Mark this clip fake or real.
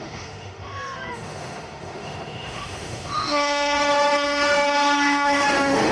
fake